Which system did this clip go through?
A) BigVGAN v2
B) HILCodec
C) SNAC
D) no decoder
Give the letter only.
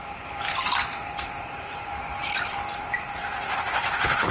A